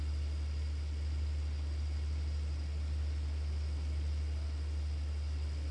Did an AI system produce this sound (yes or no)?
no